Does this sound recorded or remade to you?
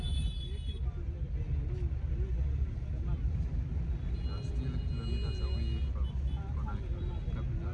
recorded